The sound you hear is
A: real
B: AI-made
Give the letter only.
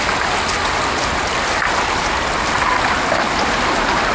A